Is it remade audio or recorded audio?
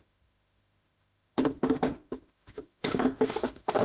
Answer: remade